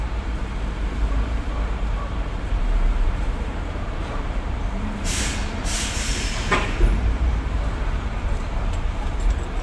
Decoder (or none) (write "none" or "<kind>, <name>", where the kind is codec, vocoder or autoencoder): vocoder, BigVGAN v2